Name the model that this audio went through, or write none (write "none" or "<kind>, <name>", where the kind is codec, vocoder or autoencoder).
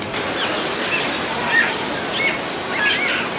none